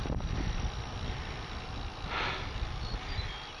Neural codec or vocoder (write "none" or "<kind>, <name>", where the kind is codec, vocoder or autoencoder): none